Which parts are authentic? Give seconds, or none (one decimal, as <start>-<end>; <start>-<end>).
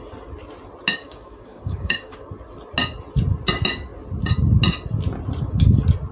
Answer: 0.0-0.9; 2.2-6.1